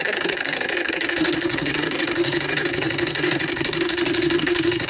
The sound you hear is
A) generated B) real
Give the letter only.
A